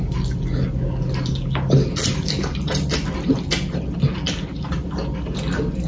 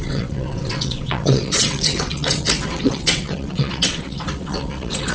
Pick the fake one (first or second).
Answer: second